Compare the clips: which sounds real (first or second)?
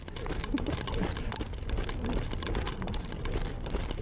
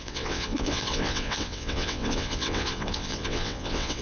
first